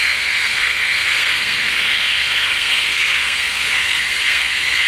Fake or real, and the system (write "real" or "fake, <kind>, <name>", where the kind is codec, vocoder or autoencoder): fake, codec, SNAC